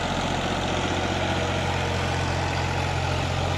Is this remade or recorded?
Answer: recorded